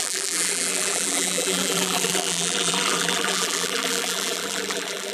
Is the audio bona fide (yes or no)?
no